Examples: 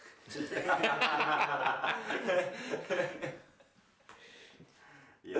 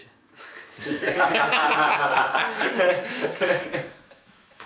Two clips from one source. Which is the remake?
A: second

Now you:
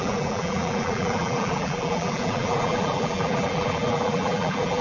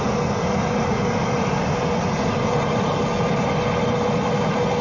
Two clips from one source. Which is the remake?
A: first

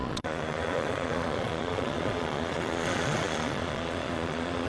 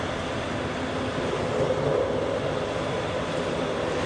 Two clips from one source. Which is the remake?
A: first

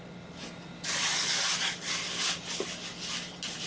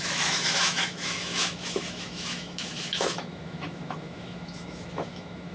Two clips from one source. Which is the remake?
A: second